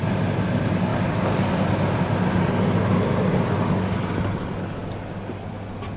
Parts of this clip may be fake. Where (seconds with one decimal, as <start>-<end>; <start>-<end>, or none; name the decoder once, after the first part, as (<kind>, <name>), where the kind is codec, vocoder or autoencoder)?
none